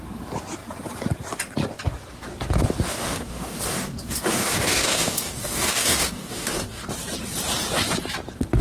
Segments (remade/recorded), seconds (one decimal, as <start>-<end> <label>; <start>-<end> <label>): 0.0-2.9 recorded; 2.9-6.9 remade; 6.9-8.6 recorded